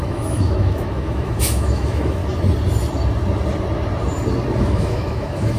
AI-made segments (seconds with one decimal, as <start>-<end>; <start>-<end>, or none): 0.0-2.2; 4.6-5.6